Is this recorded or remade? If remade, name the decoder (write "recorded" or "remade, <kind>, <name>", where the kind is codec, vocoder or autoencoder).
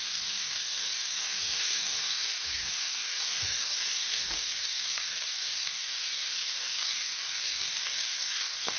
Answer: remade, codec, DAC